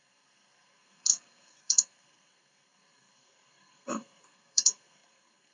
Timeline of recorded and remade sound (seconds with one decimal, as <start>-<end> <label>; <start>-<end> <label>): 0.0-5.5 remade